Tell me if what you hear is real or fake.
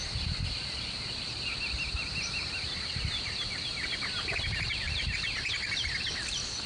real